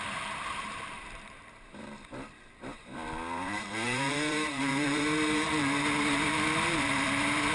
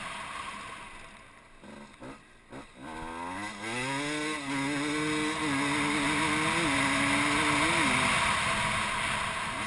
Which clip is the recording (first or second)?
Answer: second